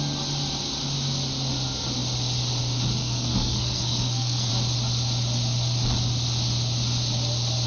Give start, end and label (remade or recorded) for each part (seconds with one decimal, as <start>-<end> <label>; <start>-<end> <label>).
0.0-3.0 recorded; 3.0-4.5 remade; 4.5-7.7 recorded